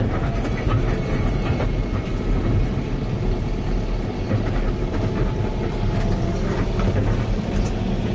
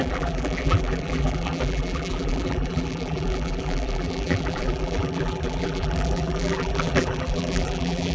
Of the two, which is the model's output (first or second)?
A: second